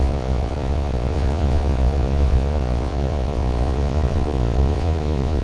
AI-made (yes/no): yes